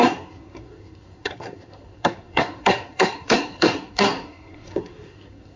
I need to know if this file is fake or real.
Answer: fake